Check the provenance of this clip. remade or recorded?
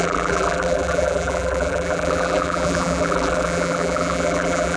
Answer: remade